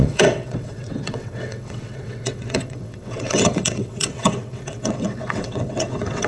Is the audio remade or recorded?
remade